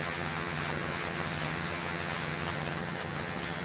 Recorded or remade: remade